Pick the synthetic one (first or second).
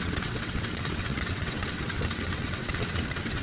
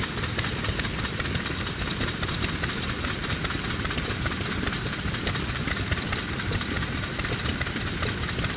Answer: first